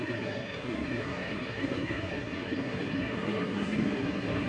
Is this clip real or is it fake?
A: fake